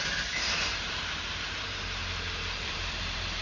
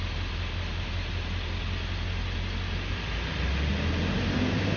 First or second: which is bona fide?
second